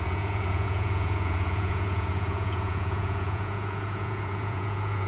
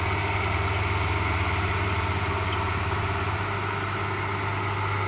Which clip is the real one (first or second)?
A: second